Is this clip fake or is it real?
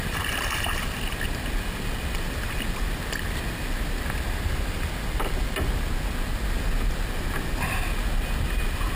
real